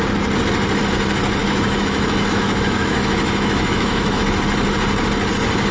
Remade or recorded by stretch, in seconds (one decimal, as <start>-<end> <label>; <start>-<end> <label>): 0.0-1.4 recorded; 1.4-4.2 remade; 4.2-5.7 recorded